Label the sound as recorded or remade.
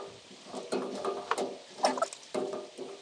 recorded